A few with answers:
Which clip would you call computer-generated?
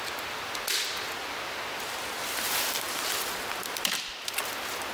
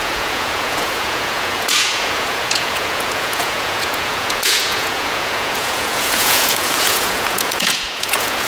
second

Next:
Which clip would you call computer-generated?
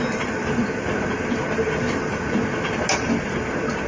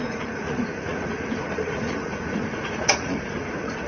second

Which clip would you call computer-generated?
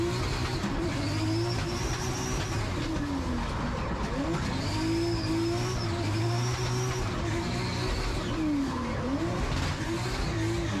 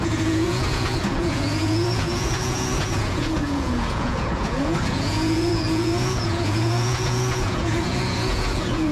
second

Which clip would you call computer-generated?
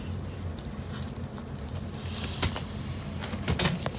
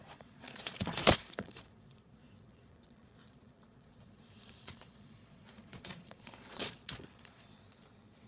second